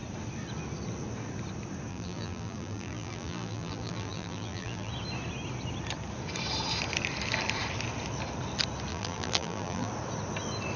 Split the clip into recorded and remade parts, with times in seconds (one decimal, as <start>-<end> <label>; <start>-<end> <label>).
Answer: 0.0-1.9 recorded; 1.9-4.9 remade; 4.9-8.9 recorded; 8.9-9.9 remade; 9.9-10.8 recorded